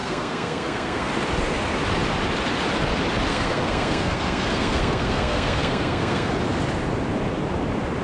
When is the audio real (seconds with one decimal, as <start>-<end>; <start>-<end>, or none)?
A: 1.1-3.3; 6.3-8.0